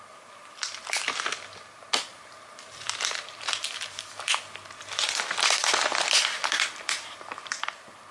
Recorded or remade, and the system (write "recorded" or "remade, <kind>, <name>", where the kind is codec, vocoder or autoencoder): recorded